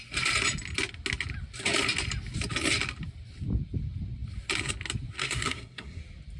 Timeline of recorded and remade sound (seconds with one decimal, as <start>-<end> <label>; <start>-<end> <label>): 0.0-5.2 recorded; 5.2-6.0 remade; 6.0-6.4 recorded